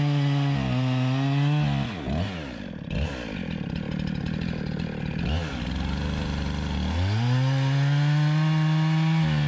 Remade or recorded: recorded